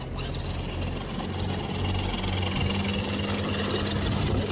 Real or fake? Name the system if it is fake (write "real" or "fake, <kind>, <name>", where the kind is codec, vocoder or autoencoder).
real